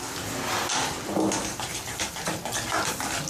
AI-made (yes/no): no